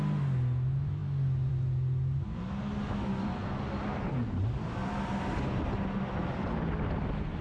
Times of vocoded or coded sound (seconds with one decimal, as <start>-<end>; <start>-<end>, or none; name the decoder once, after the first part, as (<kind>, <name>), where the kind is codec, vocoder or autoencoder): none